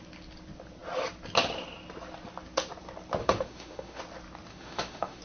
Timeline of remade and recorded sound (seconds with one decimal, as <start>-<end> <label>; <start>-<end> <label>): 0.0-3.2 recorded; 3.2-4.0 remade; 4.0-4.5 recorded; 4.5-5.2 remade